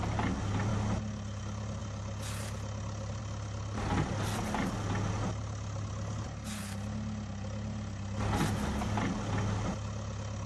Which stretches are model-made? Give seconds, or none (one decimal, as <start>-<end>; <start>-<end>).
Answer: none